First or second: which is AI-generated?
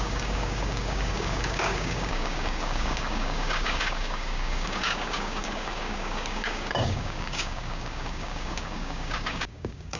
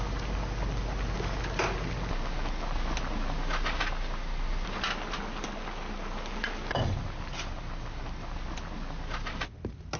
first